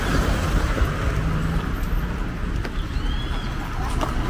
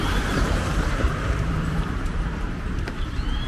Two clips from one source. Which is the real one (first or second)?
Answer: first